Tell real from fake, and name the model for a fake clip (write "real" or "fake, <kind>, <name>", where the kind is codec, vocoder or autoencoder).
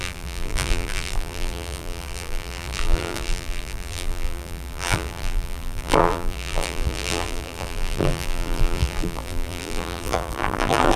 fake, vocoder, BigVGAN v2